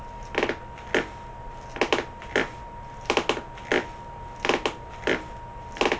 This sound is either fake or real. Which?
real